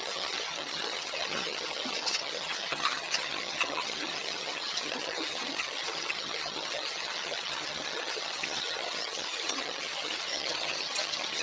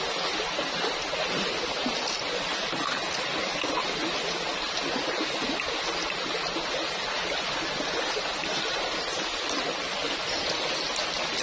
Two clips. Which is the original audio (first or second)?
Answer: second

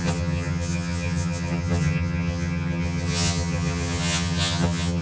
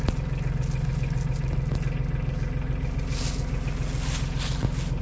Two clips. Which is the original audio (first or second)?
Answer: second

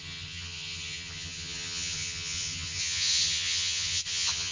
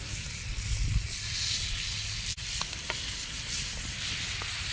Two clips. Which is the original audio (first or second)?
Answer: second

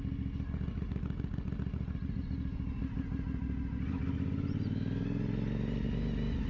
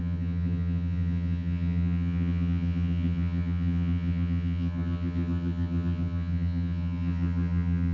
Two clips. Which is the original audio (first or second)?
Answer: first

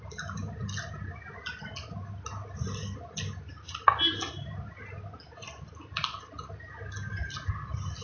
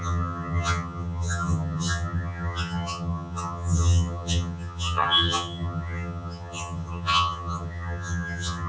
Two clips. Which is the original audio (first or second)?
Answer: first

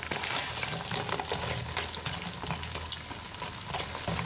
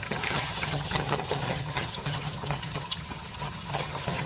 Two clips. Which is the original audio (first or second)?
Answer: first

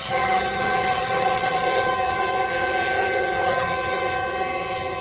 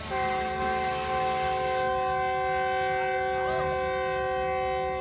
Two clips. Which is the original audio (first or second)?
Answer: second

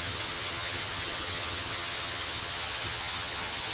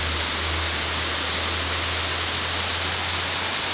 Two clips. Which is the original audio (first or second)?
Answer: second